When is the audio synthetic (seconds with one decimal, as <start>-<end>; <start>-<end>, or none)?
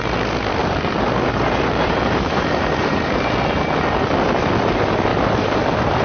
0.6-3.6; 5.1-6.0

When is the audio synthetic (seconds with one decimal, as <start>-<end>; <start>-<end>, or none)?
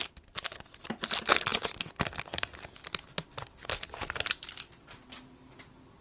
1.5-5.1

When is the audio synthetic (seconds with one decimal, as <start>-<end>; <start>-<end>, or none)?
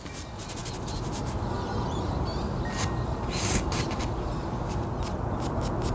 none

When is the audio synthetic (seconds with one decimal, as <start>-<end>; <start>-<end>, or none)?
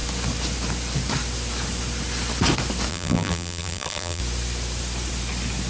2.9-4.2